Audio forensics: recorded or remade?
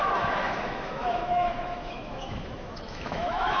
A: remade